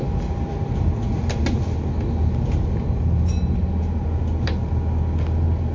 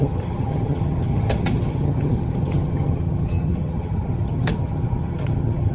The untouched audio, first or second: first